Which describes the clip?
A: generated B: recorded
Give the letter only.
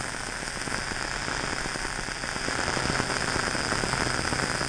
B